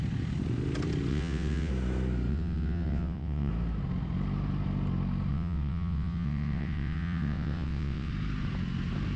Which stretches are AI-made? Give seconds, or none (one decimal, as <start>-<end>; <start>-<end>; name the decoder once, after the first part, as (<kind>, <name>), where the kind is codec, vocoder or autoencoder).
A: 1.1-1.7 (vocoder, WaveNeXt); 2.3-3.5; 5.3-8.1